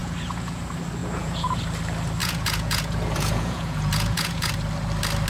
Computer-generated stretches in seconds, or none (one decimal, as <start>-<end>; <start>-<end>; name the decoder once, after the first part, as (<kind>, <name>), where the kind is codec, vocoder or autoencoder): 0.0-0.6 (vocoder, Vocos); 1.0-1.6; 2.2-4.5